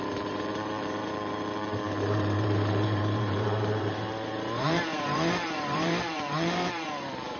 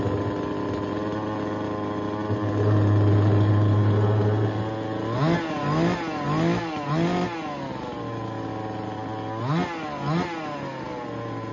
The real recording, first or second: second